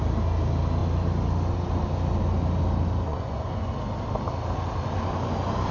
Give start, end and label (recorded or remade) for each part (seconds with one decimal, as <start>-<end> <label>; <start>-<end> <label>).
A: 0.0-3.1 recorded; 3.1-3.7 remade; 3.7-5.7 recorded